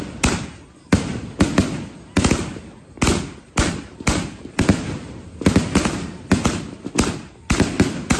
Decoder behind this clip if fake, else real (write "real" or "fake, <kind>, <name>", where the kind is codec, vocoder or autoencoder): real